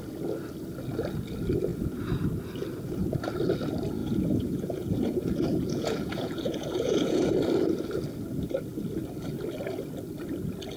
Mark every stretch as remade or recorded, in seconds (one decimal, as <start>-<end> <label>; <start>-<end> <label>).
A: 0.0-4.0 recorded; 4.0-7.3 remade; 7.3-10.8 recorded